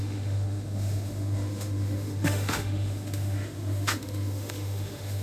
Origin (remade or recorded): remade